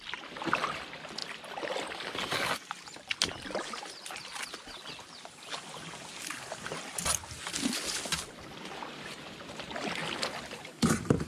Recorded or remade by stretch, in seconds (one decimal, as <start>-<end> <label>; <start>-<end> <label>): 0.0-11.3 recorded